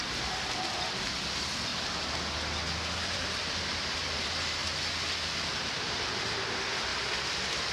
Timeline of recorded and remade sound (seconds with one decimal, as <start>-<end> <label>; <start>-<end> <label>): 0.0-1.7 remade; 1.7-3.0 recorded; 3.0-4.6 remade; 4.6-5.7 recorded; 5.7-6.9 remade; 6.9-7.7 recorded